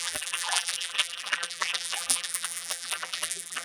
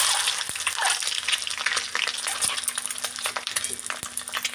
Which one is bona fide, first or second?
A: second